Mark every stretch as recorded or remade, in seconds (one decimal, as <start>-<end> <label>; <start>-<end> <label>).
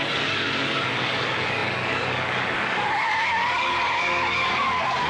0.0-5.1 remade